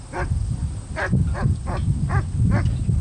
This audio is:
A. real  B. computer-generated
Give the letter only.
A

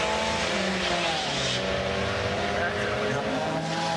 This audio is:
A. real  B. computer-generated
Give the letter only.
A